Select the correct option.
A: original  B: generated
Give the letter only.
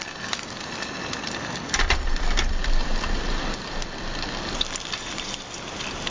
A